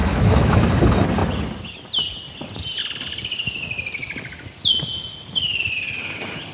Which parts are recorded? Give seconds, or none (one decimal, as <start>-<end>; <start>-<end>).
0.6-6.5